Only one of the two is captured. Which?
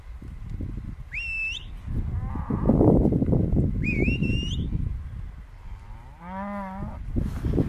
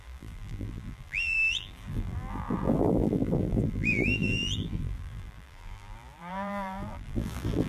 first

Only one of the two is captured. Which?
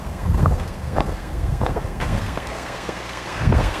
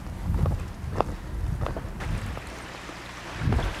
second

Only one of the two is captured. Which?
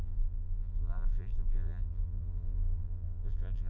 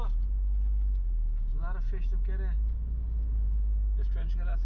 second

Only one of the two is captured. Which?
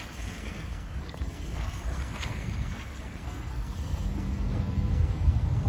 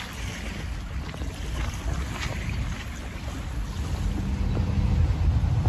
second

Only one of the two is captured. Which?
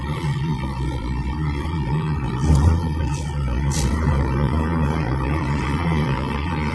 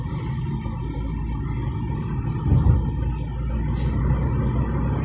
second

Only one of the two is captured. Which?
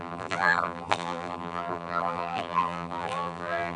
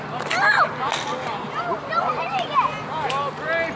second